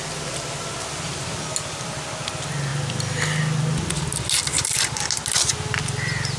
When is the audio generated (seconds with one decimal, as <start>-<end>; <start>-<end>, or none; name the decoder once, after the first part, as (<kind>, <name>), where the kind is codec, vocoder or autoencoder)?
none